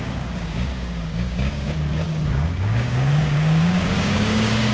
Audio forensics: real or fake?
fake